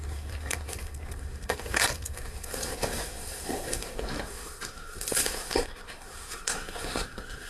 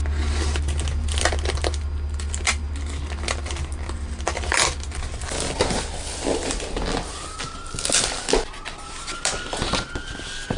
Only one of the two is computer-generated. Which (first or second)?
first